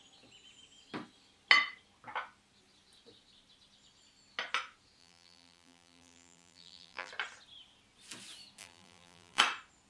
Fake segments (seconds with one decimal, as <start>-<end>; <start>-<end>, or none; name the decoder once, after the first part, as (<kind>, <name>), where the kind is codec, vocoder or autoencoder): 5.0-7.1 (vocoder, BigVGAN v2); 8.6-9.4